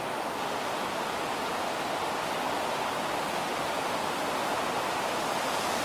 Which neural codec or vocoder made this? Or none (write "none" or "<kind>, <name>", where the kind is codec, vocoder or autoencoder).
none